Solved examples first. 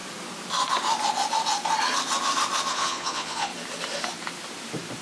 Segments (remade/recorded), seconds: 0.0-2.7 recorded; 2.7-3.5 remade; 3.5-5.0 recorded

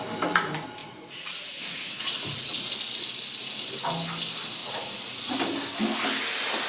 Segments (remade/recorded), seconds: 0.0-0.8 recorded; 0.8-2.7 remade; 2.7-4.6 recorded; 4.6-5.4 remade; 5.4-6.7 recorded

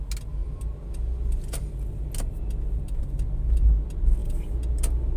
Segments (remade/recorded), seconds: 0.0-5.2 recorded

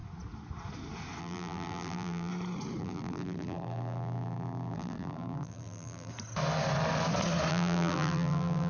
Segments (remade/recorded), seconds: 0.0-1.2 recorded; 1.2-2.3 remade; 2.3-2.8 recorded; 2.8-6.1 remade; 6.1-7.5 recorded; 7.5-8.7 remade

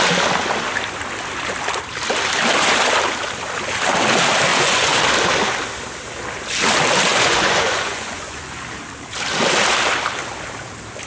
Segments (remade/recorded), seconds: 0.0-4.5 recorded; 4.5-5.0 remade; 5.0-7.1 recorded; 7.1-8.6 remade; 8.6-11.1 recorded

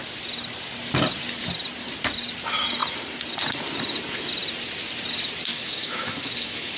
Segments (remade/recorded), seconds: 0.0-5.5 recorded; 5.5-6.8 remade

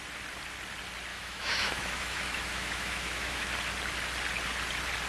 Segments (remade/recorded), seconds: 0.0-1.1 recorded; 1.1-3.5 remade; 3.5-5.1 recorded

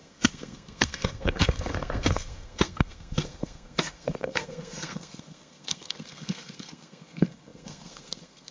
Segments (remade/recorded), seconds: 0.0-8.5 remade